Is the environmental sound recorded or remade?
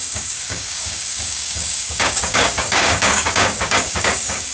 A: remade